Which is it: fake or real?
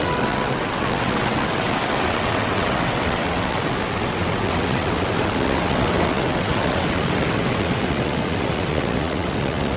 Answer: fake